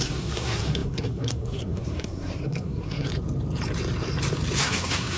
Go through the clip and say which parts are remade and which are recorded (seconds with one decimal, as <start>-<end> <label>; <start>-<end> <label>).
0.0-3.1 remade; 3.1-4.6 recorded; 4.6-5.2 remade